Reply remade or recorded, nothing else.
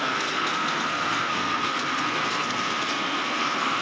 remade